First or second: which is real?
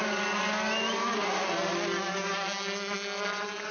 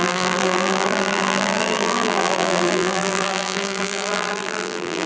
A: first